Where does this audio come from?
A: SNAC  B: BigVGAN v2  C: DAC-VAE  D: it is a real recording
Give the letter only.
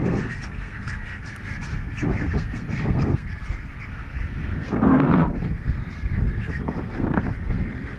A